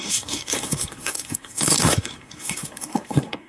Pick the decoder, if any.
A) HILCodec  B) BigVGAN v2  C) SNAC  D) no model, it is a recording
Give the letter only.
C